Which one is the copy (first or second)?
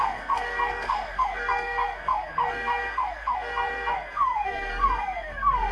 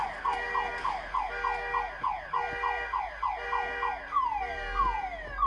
first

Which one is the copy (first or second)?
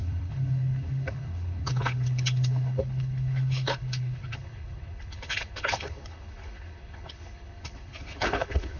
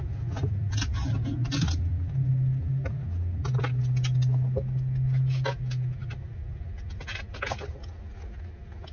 first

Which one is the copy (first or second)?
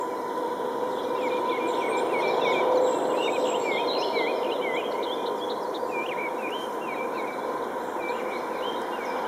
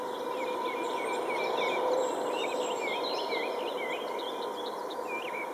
second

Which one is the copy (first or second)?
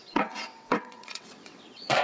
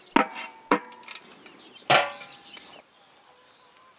first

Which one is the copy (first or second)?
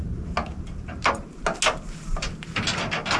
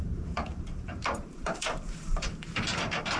second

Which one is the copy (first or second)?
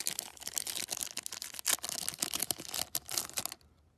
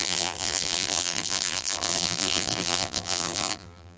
second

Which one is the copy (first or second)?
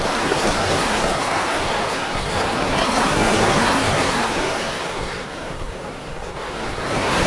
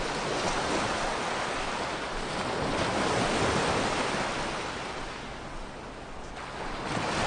first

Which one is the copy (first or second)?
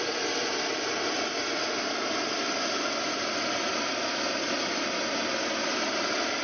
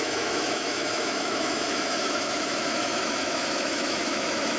second